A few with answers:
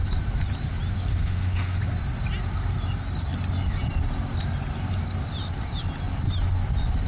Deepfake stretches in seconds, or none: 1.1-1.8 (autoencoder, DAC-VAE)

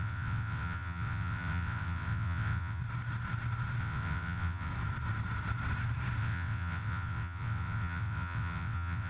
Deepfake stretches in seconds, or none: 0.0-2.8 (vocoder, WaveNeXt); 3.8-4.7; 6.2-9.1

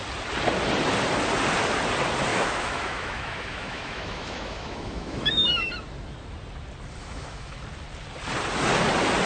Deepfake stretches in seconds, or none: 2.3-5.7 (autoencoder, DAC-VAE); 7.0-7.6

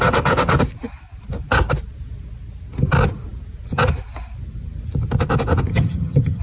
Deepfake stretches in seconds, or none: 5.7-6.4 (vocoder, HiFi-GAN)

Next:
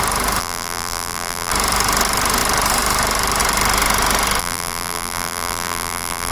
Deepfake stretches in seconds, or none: 0.4-1.5 (vocoder, BigVGAN v2); 4.4-6.3